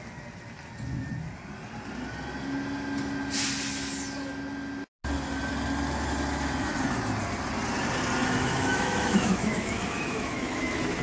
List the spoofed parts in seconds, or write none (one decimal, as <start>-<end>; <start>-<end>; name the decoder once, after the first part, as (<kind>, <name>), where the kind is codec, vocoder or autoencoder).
8.2-11.0 (autoencoder, DAC-VAE)